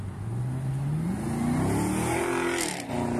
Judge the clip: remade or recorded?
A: recorded